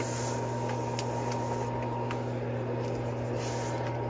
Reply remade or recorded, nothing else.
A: recorded